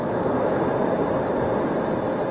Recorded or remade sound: recorded